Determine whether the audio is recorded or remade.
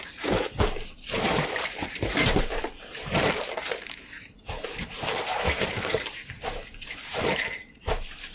remade